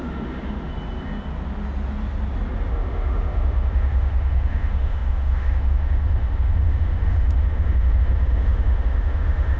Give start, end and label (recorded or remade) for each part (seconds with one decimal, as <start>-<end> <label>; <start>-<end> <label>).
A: 0.0-0.7 remade; 0.7-2.7 recorded; 2.7-9.6 remade